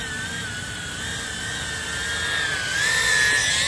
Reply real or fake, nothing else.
real